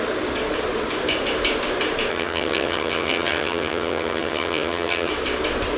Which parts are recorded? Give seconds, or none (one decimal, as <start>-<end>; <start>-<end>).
0.0-2.1; 5.1-5.8